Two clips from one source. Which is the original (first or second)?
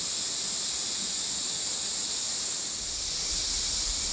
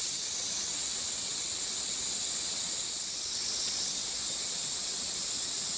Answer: first